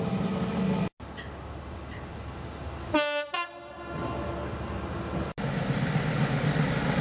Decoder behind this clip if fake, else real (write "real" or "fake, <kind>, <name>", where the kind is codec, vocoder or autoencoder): real